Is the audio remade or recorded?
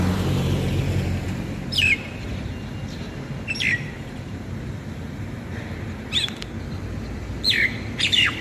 remade